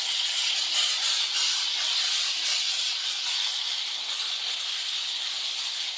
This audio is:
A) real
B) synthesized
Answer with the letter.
B